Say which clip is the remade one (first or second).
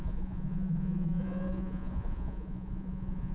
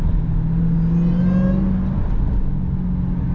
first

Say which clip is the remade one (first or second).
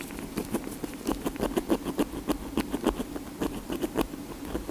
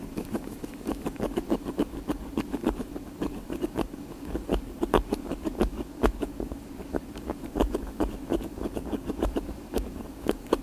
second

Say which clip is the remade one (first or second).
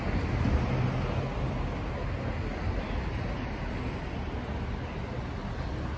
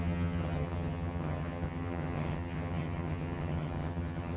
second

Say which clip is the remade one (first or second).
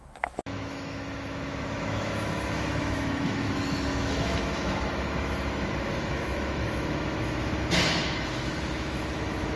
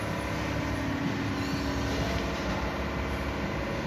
first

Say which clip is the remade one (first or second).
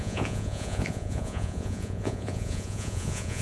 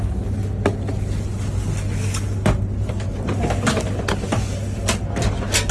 first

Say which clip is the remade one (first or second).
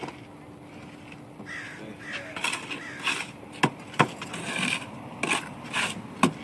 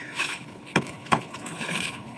second